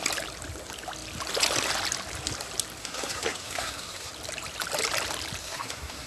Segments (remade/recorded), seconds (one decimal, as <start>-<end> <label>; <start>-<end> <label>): 0.0-2.8 recorded; 2.8-4.1 remade; 4.1-5.4 recorded; 5.4-6.1 remade